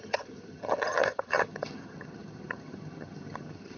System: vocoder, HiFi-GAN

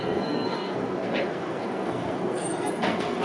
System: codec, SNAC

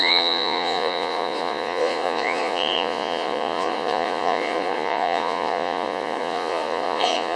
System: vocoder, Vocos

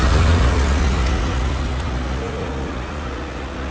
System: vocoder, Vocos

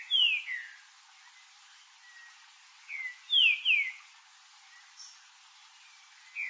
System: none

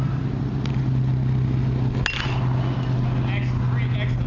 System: none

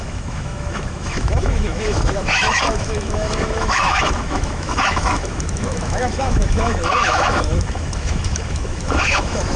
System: autoencoder, DAC-VAE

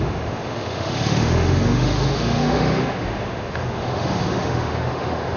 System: autoencoder, DAC-VAE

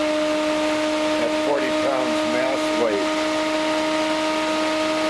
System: none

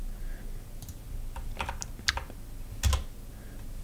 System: none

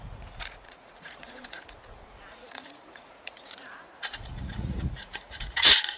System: vocoder, Vocos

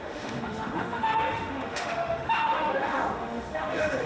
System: autoencoder, DAC-VAE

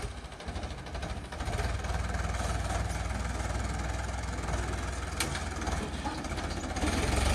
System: none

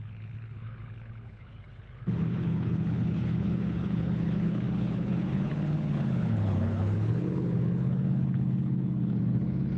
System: codec, HILCodec